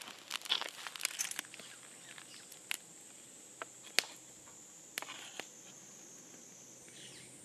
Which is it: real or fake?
real